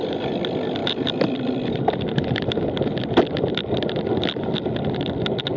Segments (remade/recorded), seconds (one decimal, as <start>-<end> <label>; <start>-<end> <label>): 0.0-5.6 recorded